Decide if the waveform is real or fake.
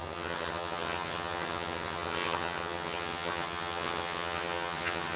fake